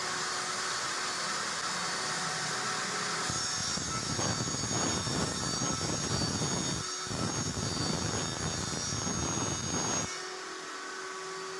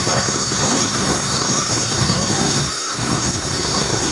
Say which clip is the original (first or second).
first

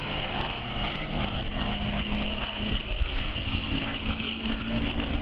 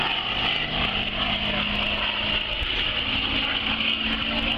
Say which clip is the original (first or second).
second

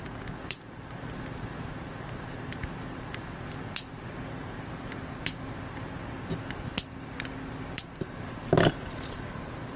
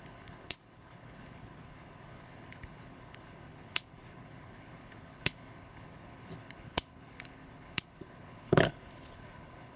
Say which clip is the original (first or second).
first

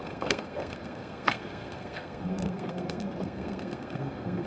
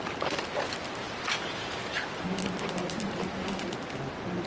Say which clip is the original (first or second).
second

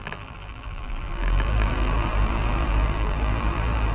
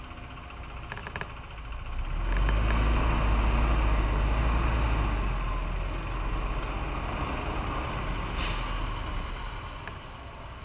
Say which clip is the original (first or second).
second